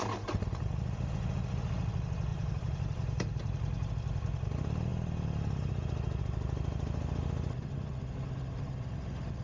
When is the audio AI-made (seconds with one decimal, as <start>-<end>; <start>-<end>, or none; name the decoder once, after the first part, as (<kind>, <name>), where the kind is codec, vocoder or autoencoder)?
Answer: 2.3-3.9 (vocoder, BigVGAN v2)